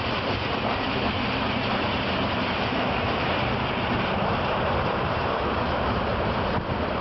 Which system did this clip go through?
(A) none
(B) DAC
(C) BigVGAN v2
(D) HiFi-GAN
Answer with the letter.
C